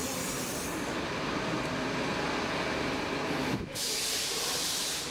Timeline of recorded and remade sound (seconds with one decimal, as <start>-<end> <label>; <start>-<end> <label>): 0.0-3.4 recorded; 3.4-4.0 remade; 4.0-5.1 recorded